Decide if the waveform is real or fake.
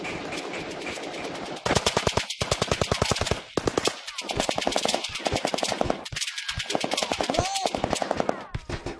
real